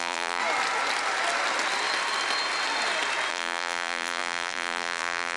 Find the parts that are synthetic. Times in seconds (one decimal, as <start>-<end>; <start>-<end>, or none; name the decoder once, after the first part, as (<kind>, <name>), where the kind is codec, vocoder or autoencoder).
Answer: 0.0-0.4 (vocoder, BigVGAN v2); 3.3-5.4